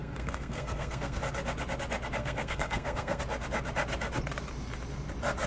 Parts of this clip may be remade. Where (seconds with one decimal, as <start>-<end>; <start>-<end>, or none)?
0.0-1.2; 2.2-3.2